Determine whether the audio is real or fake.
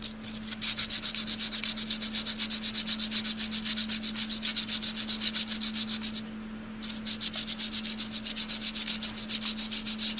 real